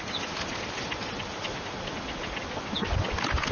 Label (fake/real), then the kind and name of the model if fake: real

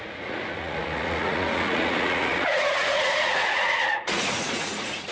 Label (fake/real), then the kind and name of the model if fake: fake, vocoder, Vocos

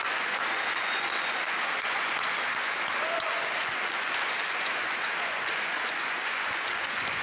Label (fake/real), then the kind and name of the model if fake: fake, vocoder, Vocos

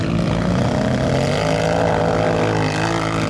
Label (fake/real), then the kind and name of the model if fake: real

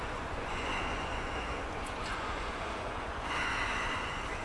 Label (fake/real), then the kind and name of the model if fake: fake, vocoder, Vocos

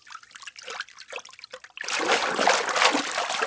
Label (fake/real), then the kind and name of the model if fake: real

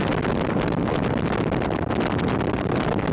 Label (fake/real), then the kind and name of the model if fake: real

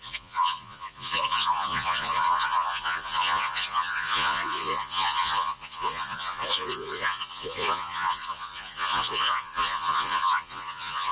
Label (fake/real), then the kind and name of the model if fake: fake, vocoder, Vocos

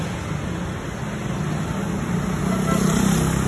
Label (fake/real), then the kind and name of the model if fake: real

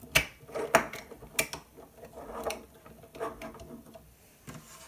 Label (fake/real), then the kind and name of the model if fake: real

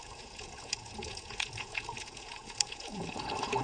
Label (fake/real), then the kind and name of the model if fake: fake, vocoder, Vocos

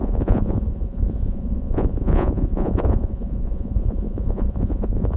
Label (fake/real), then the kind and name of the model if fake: fake, vocoder, Vocos